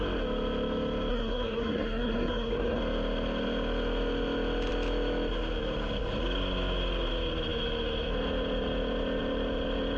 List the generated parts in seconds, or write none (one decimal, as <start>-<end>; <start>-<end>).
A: 1.1-2.8